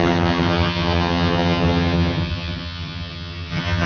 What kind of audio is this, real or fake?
fake